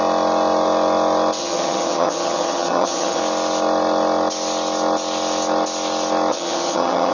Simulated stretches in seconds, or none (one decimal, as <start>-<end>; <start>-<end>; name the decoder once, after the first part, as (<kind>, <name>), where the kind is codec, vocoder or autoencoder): 1.4-3.2 (vocoder, HiFi-GAN); 6.3-7.1